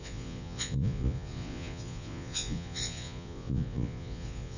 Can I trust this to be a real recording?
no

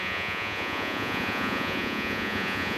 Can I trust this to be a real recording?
no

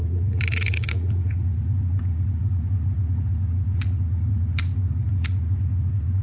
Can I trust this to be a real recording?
no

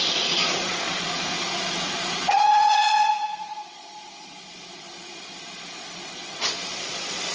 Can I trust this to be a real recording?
no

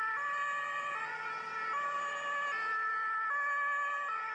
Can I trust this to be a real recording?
yes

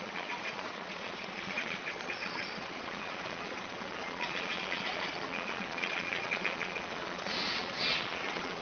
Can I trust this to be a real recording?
no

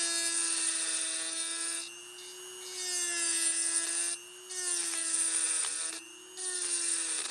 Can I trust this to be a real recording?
yes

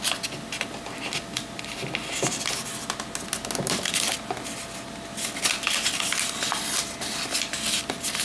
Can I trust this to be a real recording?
yes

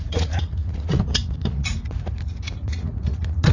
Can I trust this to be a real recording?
no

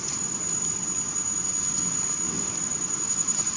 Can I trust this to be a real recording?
yes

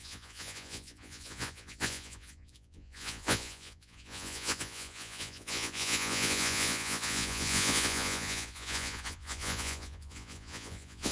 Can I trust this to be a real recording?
no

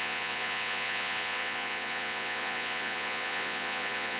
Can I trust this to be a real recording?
no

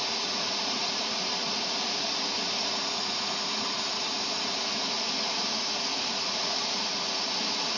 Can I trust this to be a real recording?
no